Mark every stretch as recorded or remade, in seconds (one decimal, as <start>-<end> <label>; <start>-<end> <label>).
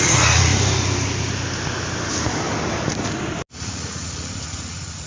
0.0-0.5 remade; 0.5-3.6 recorded; 3.6-5.1 remade